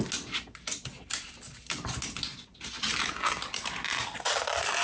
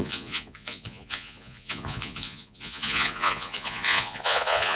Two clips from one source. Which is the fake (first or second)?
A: second